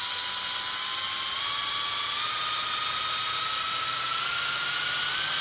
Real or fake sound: real